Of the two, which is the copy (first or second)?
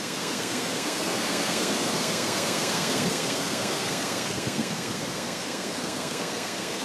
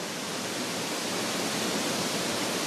first